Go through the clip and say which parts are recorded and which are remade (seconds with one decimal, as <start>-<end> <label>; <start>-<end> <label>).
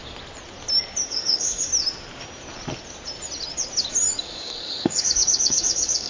0.0-1.0 recorded; 1.0-1.7 remade; 1.7-4.2 recorded; 4.2-6.1 remade